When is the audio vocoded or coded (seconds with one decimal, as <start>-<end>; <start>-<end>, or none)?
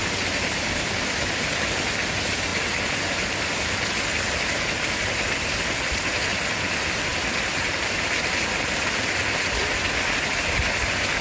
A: none